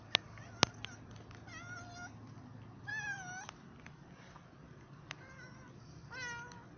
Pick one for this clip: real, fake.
real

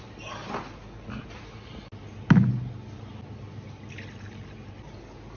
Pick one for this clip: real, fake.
real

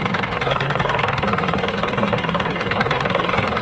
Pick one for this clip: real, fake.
fake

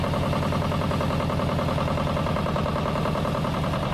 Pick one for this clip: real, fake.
real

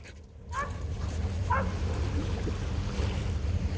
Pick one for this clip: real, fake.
real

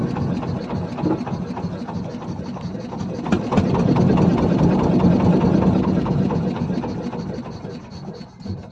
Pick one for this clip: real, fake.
real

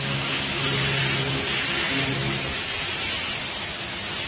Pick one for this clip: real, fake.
real